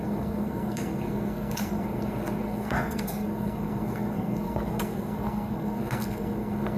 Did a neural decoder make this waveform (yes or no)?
yes